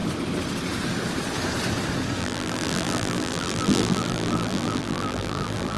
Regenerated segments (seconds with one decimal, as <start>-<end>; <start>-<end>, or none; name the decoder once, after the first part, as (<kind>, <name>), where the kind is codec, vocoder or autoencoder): 2.2-5.8 (vocoder, BigVGAN v2)